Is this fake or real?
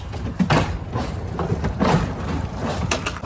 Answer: real